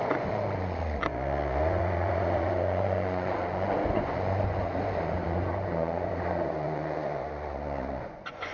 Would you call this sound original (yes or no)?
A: no